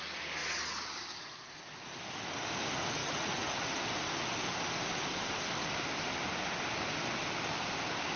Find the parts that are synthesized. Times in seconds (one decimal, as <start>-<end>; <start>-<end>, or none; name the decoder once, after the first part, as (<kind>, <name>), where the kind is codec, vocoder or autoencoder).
3.0-3.7 (vocoder, Vocos)